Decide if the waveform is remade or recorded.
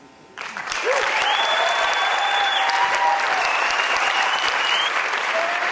remade